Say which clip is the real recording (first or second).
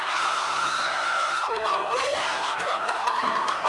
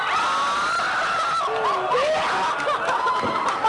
second